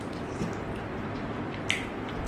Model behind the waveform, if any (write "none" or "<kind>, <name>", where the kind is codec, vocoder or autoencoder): none